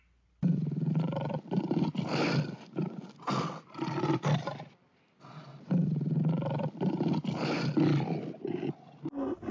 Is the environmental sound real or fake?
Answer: real